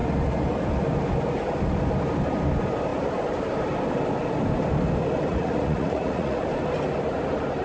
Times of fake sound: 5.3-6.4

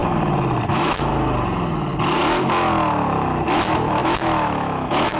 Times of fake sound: 0.7-1.1; 3.5-5.2

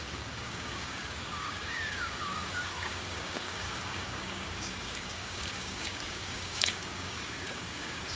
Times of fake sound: 0.0-8.2

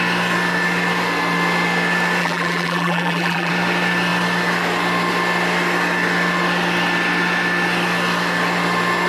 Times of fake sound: 2.2-3.5

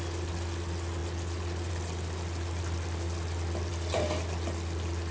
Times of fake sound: none

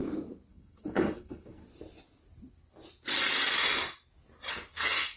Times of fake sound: 0.5-1.6; 4.5-5.2

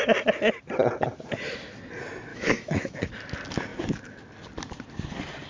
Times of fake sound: 2.3-3.1